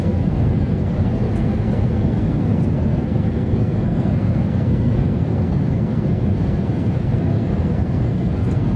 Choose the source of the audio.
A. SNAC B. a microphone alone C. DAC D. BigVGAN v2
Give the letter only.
A